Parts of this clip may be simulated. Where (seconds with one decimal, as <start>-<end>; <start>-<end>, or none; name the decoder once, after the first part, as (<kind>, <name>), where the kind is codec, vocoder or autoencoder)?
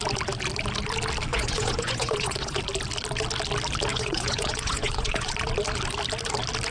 1.3-2.6 (vocoder, Vocos); 3.9-5.3